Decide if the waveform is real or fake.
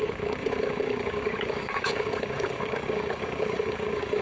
fake